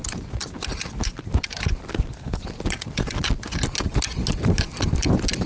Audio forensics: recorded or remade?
recorded